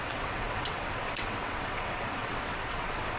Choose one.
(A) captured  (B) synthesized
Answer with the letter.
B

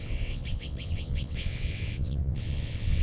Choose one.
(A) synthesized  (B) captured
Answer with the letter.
A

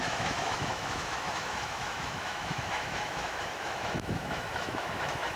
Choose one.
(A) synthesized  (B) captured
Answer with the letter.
A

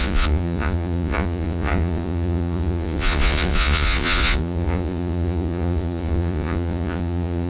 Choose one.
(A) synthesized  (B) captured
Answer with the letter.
A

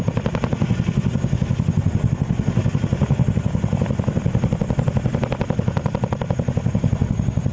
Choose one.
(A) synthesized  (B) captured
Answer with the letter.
B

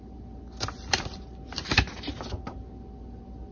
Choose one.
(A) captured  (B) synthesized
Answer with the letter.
A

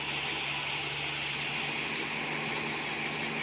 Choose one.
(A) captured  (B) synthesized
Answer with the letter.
A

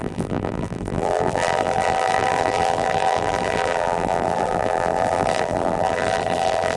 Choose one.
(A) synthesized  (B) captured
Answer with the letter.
A